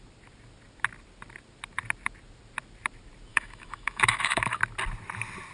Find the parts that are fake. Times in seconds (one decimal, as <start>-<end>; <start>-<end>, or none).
3.3-4.6